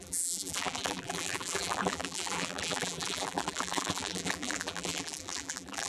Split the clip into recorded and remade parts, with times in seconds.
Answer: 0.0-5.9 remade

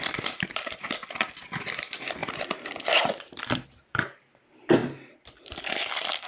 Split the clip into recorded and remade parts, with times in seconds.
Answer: 0.0-6.3 remade

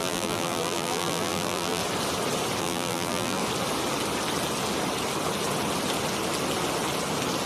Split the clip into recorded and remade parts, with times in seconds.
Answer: 0.0-1.8 remade; 1.8-2.6 recorded; 2.6-3.4 remade; 3.4-7.5 recorded

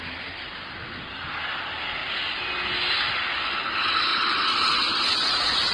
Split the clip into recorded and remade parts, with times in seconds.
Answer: 0.0-5.7 recorded

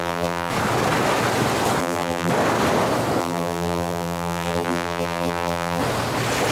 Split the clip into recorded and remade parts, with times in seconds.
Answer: 0.0-0.5 remade; 0.5-1.8 recorded; 1.8-2.3 remade; 2.3-3.2 recorded; 3.2-5.8 remade; 5.8-6.5 recorded

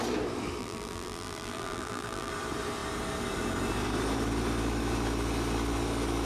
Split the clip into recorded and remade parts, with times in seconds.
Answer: 0.0-0.6 recorded; 0.6-2.3 remade; 2.3-6.3 recorded

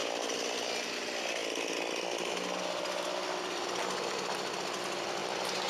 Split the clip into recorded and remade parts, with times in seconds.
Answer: 0.0-5.2 recorded; 5.2-5.7 remade